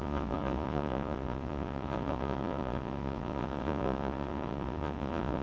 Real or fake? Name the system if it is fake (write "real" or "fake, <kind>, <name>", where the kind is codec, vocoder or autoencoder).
fake, vocoder, Vocos